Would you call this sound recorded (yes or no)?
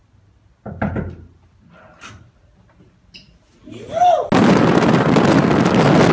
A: yes